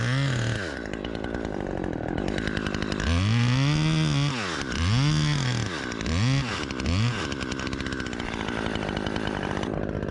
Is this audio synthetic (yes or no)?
no